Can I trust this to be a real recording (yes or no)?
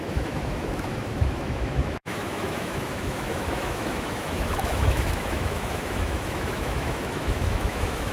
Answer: no